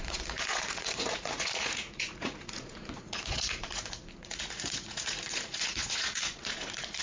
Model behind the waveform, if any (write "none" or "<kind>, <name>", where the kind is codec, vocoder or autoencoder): vocoder, Vocos